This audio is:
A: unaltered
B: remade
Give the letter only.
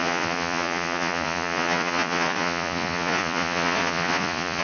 B